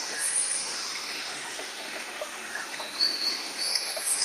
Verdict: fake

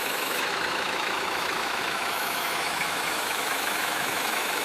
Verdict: fake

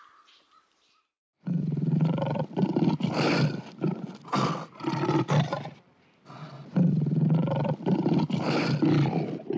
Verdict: real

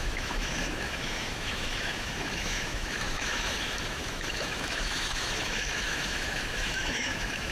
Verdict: fake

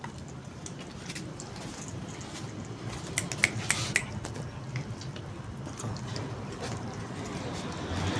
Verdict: real